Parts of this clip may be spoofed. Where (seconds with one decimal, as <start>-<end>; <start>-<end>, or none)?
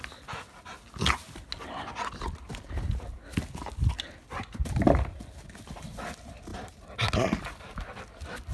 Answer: none